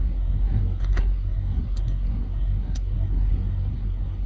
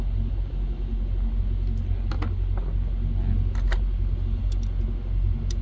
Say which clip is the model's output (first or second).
first